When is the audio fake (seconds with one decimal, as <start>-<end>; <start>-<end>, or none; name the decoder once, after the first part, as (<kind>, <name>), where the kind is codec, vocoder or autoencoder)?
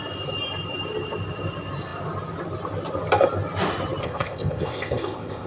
4.0-5.5 (codec, ZipCodec)